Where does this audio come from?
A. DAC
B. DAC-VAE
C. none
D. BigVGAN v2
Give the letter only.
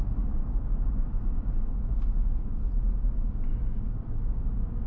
C